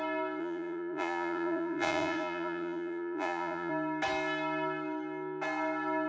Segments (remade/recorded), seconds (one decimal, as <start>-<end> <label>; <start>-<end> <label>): 0.0-0.4 recorded; 0.4-3.7 remade; 3.7-6.1 recorded